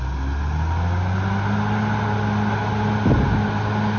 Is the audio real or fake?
real